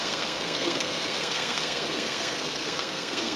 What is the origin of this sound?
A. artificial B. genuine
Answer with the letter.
A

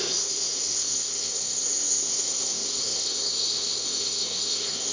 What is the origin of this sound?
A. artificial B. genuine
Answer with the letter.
A